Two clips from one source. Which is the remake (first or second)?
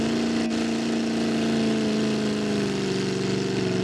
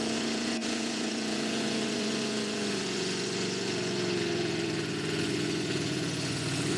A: second